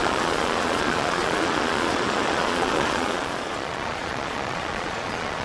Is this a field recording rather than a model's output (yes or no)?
no